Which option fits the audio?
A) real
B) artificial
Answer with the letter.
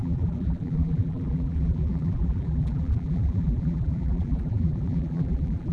B